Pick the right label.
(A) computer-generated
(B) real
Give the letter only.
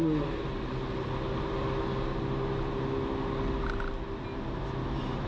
B